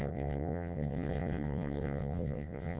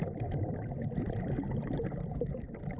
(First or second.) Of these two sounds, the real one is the second